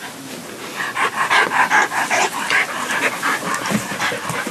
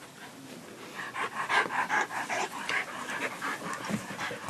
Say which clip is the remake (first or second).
second